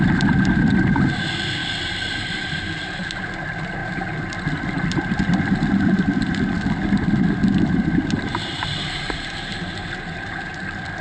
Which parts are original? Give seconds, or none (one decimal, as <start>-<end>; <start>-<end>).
0.0-11.0